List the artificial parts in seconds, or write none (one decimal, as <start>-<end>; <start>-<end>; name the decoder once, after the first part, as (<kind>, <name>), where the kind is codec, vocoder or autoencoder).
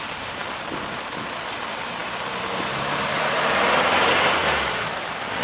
0.0-0.4 (vocoder, BigVGAN v2); 0.9-5.4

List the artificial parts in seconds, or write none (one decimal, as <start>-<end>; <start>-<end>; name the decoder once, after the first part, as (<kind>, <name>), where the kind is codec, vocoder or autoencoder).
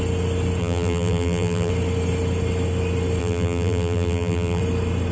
0.6-1.7 (vocoder, BigVGAN v2); 3.2-4.6